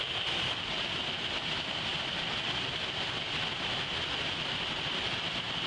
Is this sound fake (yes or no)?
no